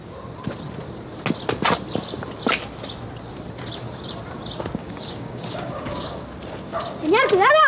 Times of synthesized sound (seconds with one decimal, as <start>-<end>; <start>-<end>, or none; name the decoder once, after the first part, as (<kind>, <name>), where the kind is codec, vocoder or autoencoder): 4.8-6.2 (codec, DAC)